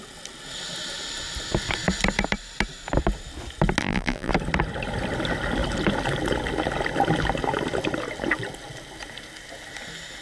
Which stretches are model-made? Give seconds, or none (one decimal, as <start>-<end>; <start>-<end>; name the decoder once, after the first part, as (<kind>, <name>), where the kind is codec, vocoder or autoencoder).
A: 3.8-4.3 (vocoder, BigVGAN v2)